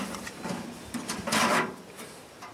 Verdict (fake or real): fake